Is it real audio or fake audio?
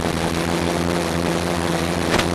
real